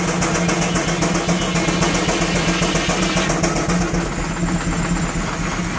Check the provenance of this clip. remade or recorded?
recorded